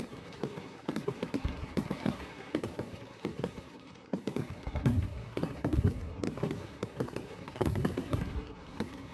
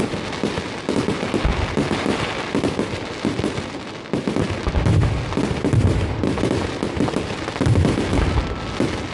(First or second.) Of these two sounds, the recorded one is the second